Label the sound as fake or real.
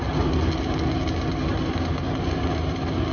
real